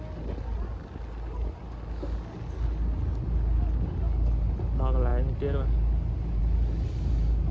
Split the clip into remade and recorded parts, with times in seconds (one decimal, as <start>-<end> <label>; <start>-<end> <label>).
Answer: 0.0-7.5 recorded